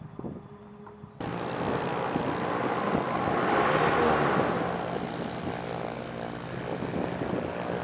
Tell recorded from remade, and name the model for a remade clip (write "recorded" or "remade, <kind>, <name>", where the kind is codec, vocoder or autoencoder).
recorded